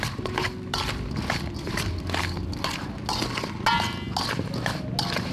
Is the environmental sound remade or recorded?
recorded